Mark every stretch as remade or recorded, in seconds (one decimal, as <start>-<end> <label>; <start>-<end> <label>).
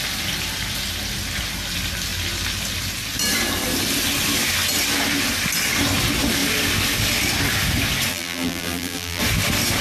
0.0-8.1 recorded; 8.1-9.2 remade; 9.2-9.8 recorded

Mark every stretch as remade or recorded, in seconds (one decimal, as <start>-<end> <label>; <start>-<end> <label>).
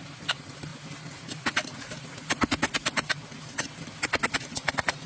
0.0-5.1 recorded